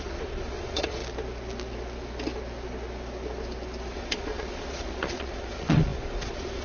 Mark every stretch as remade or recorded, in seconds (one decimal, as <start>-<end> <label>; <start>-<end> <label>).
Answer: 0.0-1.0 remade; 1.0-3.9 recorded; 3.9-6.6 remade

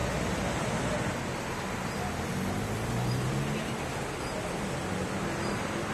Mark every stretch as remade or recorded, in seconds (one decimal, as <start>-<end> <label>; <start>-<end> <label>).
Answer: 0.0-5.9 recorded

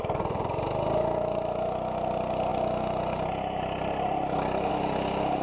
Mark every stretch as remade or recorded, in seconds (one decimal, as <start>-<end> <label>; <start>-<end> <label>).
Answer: 0.0-5.4 recorded

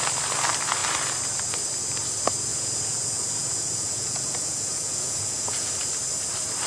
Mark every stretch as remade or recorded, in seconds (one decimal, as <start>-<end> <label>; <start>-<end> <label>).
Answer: 0.0-2.5 recorded; 2.5-5.7 remade; 5.7-6.7 recorded